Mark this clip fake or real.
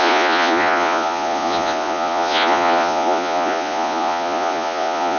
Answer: fake